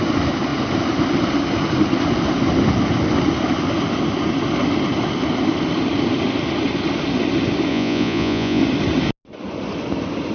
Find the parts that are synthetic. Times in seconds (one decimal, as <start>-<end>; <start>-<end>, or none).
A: 7.7-8.6